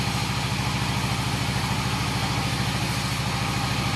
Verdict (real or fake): real